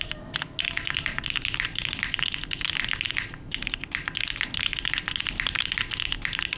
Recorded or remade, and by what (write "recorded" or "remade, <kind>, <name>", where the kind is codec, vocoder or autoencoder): recorded